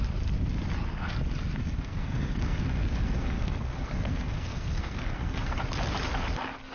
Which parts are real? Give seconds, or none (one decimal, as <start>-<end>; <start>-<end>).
0.0-1.6; 5.6-6.7